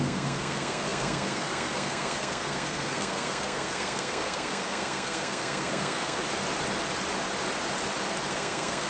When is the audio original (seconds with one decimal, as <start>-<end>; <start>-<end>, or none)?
6.2-8.3